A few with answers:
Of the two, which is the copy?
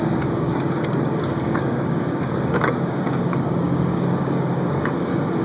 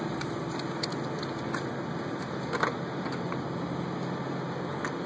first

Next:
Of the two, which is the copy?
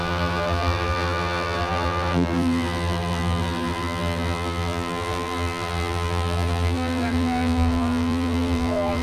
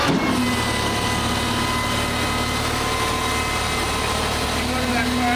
first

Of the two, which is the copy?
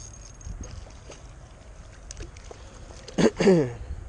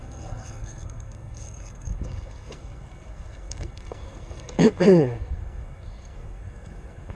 second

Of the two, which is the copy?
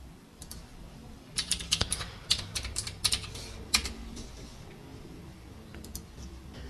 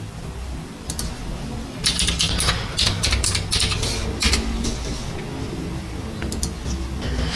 first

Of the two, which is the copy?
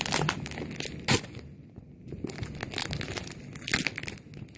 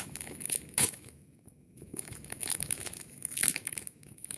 second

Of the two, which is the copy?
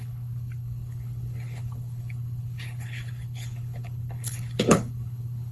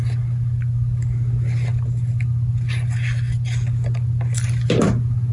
first